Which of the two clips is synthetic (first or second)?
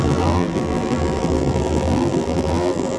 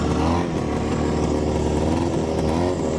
first